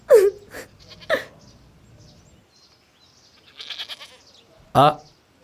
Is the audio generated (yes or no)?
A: no